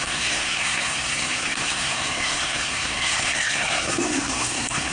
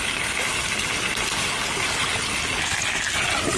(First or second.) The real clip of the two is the second